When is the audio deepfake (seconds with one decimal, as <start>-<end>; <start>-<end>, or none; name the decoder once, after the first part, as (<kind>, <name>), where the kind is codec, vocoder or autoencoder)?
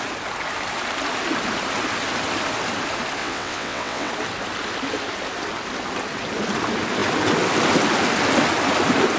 3.2-4.1 (vocoder, WaveNeXt)